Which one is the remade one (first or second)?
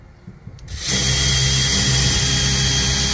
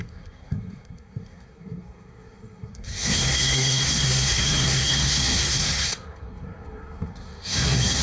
second